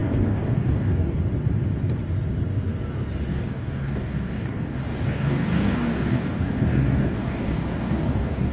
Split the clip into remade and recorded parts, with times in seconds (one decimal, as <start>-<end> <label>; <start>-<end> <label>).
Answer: 0.0-1.2 remade; 1.2-3.3 recorded; 3.3-8.5 remade